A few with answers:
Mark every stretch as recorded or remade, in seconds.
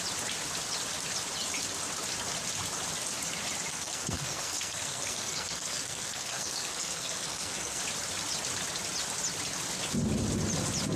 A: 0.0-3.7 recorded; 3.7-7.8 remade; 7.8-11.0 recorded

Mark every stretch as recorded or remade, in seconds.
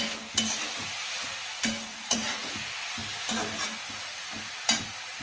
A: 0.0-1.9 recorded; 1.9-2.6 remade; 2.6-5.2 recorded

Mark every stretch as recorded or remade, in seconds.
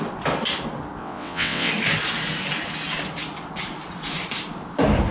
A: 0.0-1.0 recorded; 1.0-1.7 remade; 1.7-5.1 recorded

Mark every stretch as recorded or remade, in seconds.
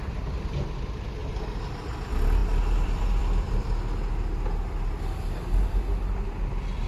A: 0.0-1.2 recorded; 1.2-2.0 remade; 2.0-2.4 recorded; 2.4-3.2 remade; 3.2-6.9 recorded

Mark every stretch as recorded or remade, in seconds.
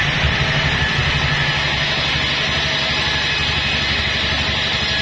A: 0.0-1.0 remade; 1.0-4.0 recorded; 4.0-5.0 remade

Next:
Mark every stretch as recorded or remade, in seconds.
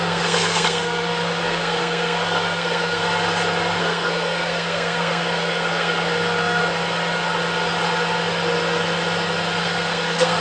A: 0.0-3.0 remade; 3.0-3.8 recorded; 3.8-6.6 remade; 6.6-9.6 recorded; 9.6-10.4 remade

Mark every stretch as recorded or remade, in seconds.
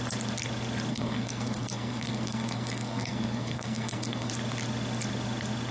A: 0.0-0.9 recorded; 0.9-4.3 remade; 4.3-5.7 recorded